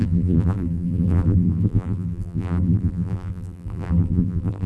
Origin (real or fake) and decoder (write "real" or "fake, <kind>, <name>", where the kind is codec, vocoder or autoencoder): fake, vocoder, BigVGAN v2